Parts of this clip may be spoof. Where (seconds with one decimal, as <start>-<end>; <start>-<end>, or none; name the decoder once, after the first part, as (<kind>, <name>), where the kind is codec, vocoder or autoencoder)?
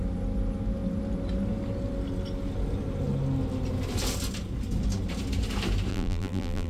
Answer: 5.9-6.7 (vocoder, BigVGAN v2)